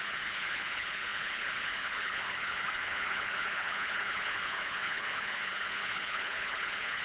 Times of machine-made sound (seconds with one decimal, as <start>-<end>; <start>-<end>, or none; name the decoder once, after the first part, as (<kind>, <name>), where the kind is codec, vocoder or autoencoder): 0.0-7.0 (codec, HILCodec)